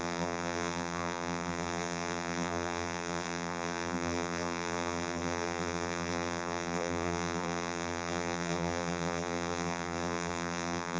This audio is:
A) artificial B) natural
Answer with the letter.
A